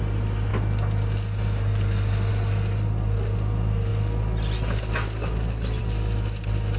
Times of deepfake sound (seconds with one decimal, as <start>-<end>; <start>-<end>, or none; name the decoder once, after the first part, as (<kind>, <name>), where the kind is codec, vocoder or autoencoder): none